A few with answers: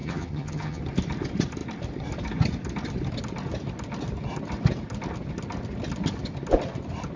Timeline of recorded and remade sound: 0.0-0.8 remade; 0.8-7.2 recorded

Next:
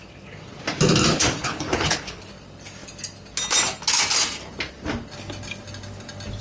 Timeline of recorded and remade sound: 0.0-1.4 recorded; 1.4-2.3 remade; 2.3-6.4 recorded

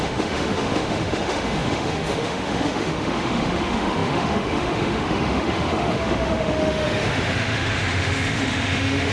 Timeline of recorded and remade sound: 0.0-9.1 remade